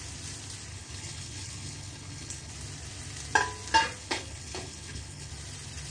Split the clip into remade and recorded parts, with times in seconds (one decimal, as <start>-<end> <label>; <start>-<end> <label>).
0.0-0.7 recorded; 0.7-2.5 remade; 2.5-4.0 recorded; 4.0-5.3 remade; 5.3-5.9 recorded